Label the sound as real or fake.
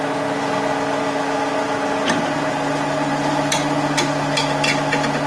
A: real